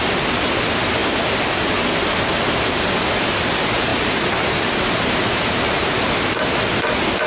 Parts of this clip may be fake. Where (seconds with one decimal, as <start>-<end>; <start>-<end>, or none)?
3.9-5.8